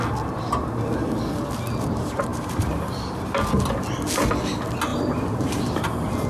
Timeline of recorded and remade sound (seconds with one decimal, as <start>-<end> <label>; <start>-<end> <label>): 0.0-2.3 recorded; 2.3-2.9 remade; 2.9-4.9 recorded; 4.9-5.6 remade; 5.6-6.3 recorded